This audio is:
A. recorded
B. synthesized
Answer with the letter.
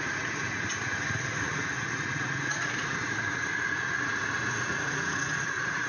B